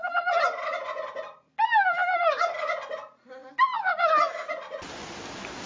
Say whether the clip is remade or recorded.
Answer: recorded